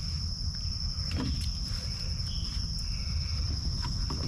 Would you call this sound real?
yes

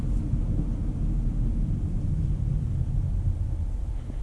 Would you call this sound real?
yes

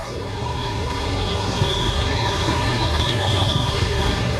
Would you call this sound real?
no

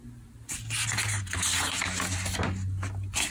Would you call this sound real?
yes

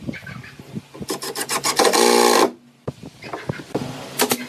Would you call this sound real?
yes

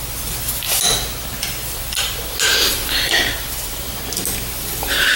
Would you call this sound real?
yes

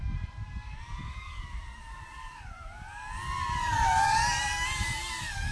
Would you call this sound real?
no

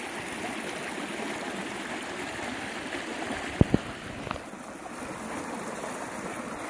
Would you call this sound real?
yes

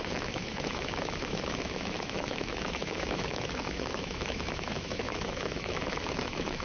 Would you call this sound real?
no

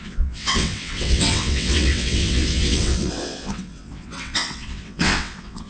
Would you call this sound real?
no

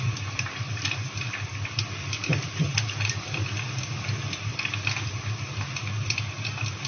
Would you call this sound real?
yes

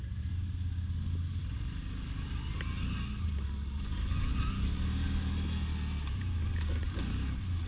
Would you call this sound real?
yes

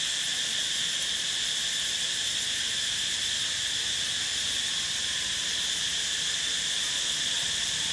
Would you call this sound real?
yes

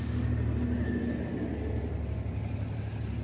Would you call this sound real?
yes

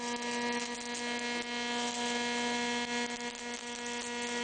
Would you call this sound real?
yes